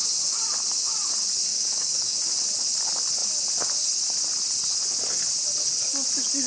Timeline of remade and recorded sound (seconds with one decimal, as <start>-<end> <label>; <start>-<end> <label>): 0.0-1.5 recorded; 1.5-2.2 remade; 2.2-6.5 recorded